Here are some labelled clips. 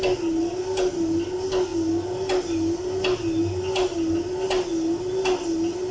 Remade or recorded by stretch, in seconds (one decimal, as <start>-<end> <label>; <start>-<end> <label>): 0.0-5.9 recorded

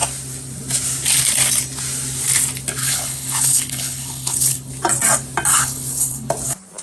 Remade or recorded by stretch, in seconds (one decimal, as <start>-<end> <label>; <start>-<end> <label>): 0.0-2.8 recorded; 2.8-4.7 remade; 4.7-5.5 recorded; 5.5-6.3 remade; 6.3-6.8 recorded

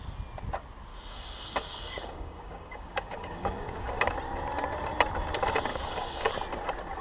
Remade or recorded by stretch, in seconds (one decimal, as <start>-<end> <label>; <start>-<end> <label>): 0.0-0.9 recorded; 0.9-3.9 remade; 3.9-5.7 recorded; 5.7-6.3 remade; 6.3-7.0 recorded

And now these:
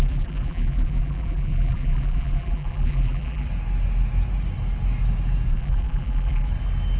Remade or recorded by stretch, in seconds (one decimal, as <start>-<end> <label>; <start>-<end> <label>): 0.0-3.5 remade; 3.5-5.5 recorded; 5.5-6.5 remade; 6.5-7.0 recorded

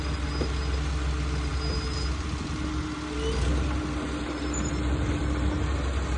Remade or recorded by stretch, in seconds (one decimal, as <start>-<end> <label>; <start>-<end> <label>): 0.0-6.2 recorded